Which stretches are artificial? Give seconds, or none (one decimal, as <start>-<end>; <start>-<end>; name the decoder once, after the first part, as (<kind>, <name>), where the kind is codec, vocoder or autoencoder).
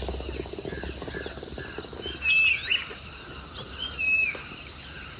none